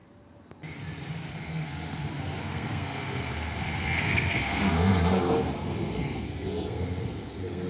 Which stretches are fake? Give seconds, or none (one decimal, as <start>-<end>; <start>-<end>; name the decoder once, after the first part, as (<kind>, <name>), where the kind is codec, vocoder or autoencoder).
1.3-7.7 (codec, SNAC)